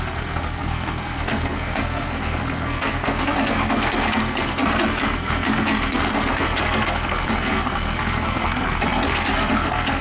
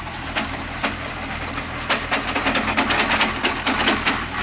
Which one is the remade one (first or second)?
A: first